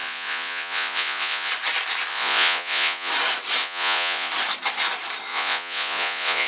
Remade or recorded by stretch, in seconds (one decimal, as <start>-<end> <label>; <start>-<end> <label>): 0.0-1.5 remade; 1.5-2.1 recorded; 2.1-3.1 remade; 3.1-3.6 recorded; 3.6-4.3 remade; 4.3-5.3 recorded; 5.3-6.5 remade